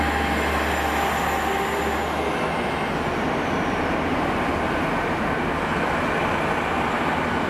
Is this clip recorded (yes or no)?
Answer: yes